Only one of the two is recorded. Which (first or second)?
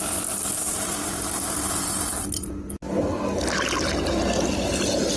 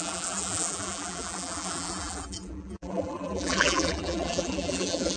first